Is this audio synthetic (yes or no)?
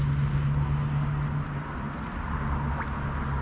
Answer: no